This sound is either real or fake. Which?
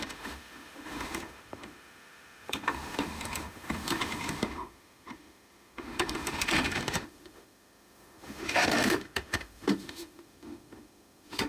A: fake